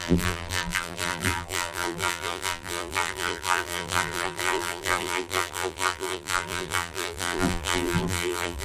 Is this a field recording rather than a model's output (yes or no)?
no